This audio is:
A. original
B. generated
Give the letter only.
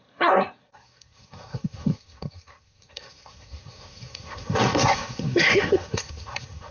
B